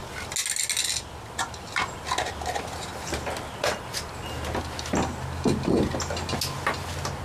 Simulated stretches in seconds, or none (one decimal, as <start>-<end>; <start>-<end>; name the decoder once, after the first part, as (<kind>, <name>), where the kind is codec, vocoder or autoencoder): none